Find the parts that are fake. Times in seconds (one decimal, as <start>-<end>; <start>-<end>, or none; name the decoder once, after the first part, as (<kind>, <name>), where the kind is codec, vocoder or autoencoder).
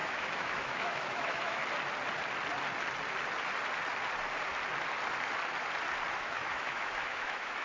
0.0-1.6 (autoencoder, DAC-VAE); 6.2-7.6